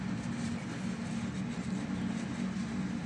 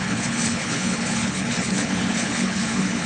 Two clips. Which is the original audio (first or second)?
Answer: first